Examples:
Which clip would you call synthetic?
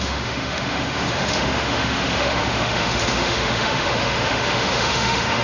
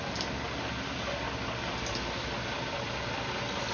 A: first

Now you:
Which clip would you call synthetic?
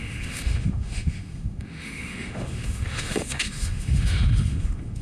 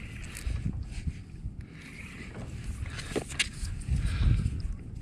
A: first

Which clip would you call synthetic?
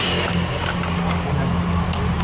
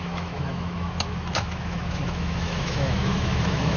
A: second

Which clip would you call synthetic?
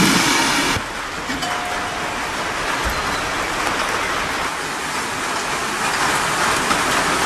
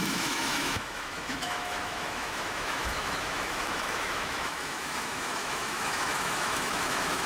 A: second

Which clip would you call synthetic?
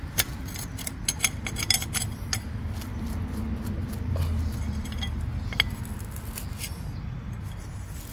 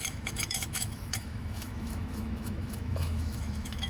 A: second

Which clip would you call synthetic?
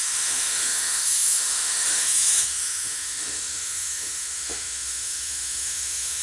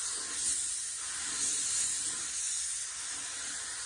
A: first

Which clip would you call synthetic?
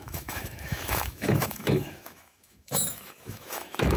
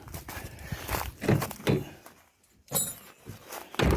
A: first